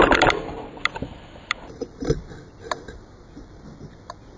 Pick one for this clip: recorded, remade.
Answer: remade